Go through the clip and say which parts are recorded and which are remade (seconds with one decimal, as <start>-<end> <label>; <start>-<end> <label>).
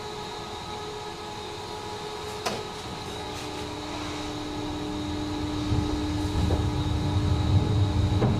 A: 0.0-2.9 recorded; 2.9-3.4 remade; 3.4-8.4 recorded